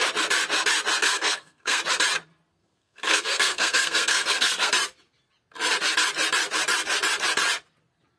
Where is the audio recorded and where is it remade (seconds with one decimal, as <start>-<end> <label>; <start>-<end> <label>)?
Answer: 0.0-1.0 recorded; 1.0-1.8 remade; 1.8-2.5 recorded; 2.5-4.7 remade; 4.7-8.2 recorded